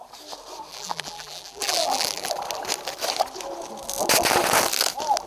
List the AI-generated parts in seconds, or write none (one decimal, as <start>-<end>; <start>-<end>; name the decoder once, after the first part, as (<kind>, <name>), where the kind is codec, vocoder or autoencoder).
0.7-2.3 (vocoder, BigVGAN v2)